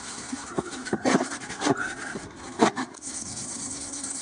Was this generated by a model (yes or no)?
yes